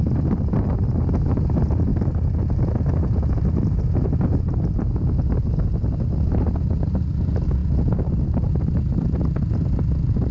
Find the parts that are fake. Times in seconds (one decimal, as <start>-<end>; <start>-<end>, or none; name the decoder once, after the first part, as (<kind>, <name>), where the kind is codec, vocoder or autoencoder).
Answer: none